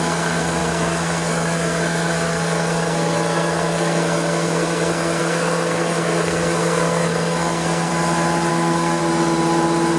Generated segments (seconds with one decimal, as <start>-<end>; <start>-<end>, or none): 0.0-7.9; 8.5-9.0